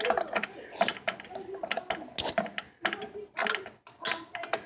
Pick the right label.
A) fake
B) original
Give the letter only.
B